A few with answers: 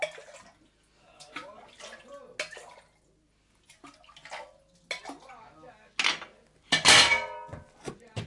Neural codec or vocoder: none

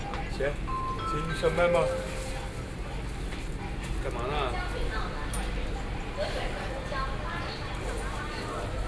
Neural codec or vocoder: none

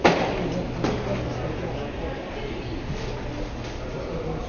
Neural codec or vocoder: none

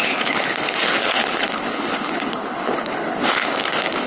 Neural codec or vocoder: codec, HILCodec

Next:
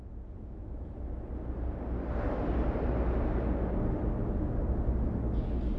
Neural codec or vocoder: none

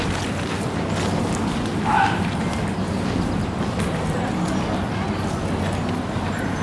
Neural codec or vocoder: none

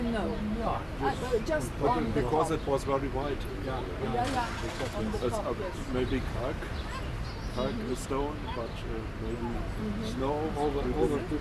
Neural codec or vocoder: none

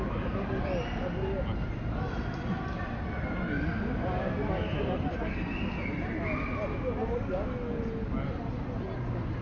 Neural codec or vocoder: none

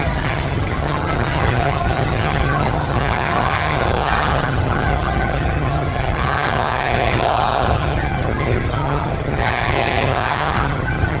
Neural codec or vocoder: vocoder, HiFi-GAN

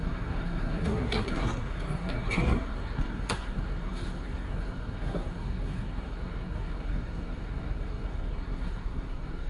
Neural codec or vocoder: codec, SNAC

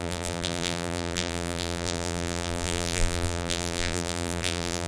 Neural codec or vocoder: vocoder, BigVGAN v2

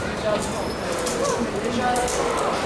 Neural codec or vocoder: vocoder, BigVGAN v2